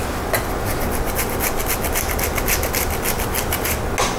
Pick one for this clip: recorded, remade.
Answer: recorded